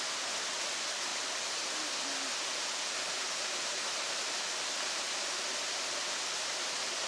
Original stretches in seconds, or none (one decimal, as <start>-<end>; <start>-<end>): 0.0-1.1; 1.7-7.1

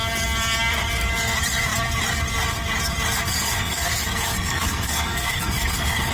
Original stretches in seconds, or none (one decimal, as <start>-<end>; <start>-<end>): 0.0-3.3

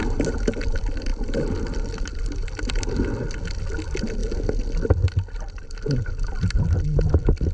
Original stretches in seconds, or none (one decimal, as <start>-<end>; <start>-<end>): 0.0-7.5

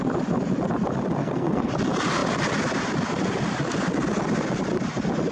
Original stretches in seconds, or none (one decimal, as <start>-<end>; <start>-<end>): 0.0-1.2; 1.7-5.3

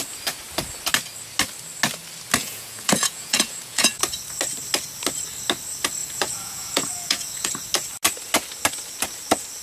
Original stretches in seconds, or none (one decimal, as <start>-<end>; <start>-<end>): 0.0-2.4; 4.0-6.0; 7.5-9.6

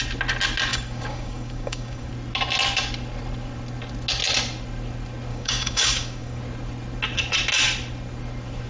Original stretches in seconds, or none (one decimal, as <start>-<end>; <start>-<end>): 0.0-0.7; 2.1-5.3; 6.4-8.7

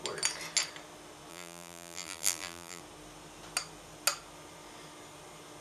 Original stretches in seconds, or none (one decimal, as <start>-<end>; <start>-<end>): 0.0-1.3; 2.8-5.6

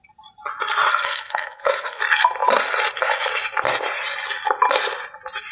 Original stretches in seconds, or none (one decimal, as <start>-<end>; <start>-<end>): 0.0-0.9; 2.0-5.5